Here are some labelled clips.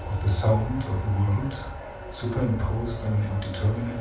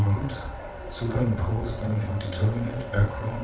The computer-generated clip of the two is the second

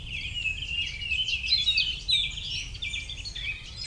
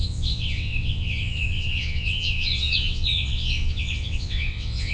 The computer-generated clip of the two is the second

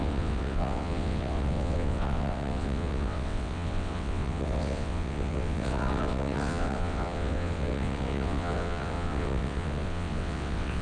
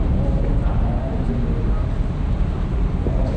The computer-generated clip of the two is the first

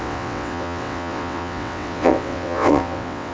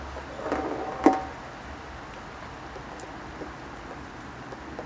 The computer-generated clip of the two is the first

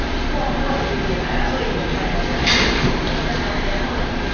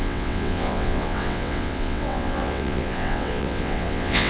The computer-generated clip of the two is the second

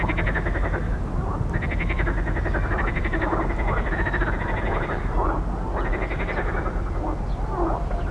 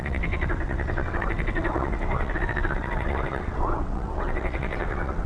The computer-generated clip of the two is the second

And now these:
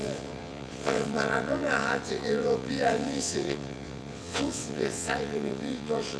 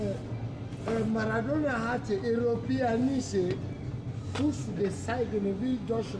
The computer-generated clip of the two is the first